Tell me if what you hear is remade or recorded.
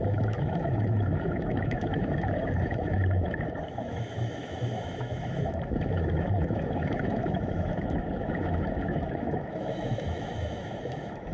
remade